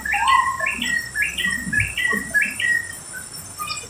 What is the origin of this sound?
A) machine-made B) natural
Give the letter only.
B